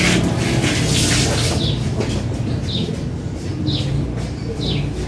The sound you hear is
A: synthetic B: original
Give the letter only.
B